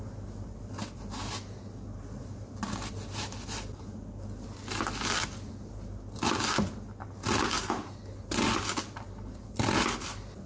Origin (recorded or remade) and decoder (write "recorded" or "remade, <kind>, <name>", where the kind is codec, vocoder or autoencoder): recorded